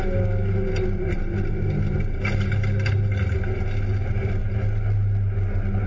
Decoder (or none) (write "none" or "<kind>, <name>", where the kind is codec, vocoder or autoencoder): none